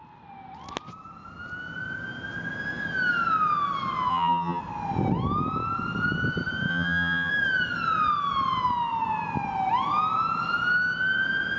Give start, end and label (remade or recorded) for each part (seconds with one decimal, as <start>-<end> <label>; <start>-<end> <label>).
0.0-4.1 recorded; 4.1-4.6 remade; 4.6-6.7 recorded; 6.7-7.3 remade; 7.3-11.6 recorded

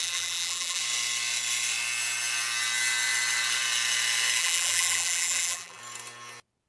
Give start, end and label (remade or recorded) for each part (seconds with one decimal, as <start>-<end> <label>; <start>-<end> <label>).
0.0-0.8 remade; 0.8-4.4 recorded; 4.4-5.8 remade; 5.8-6.7 recorded